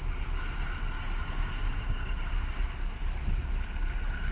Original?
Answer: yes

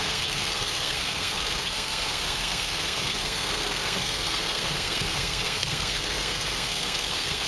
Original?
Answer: no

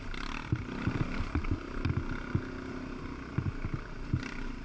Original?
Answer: yes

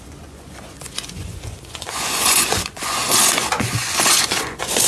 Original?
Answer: no